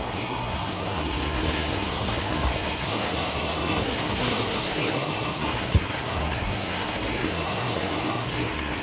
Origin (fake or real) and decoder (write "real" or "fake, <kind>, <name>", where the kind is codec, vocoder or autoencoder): fake, codec, SNAC